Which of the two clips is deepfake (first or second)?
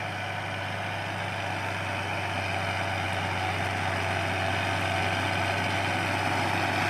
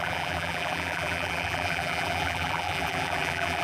second